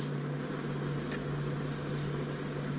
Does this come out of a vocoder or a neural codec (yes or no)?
no